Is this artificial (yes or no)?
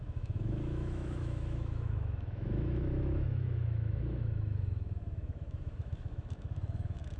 yes